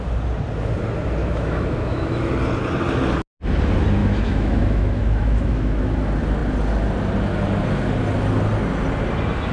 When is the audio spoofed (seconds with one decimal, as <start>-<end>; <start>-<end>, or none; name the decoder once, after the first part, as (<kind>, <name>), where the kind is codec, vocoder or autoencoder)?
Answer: 1.2-2.3 (autoencoder, DAC-VAE); 4.0-5.8